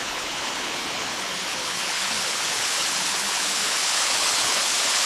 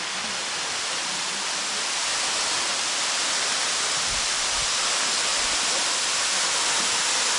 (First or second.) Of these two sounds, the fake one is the first